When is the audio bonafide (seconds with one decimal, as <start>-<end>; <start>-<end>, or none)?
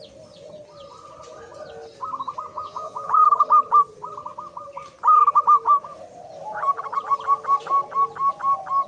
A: 0.0-2.5; 3.2-8.9